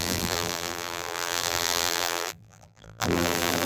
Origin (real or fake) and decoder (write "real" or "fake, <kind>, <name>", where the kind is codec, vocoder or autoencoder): fake, vocoder, BigVGAN v2